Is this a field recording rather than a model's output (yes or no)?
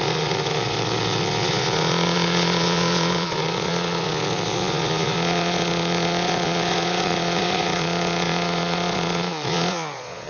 no